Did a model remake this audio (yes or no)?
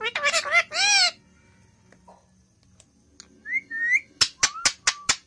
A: no